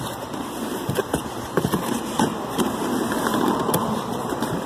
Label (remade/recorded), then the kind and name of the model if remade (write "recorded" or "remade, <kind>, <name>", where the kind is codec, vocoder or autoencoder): remade, vocoder, BigVGAN v2